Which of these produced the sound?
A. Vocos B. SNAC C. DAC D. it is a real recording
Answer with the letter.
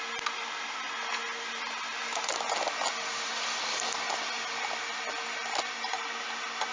D